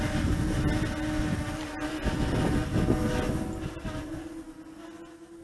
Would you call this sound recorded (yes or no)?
yes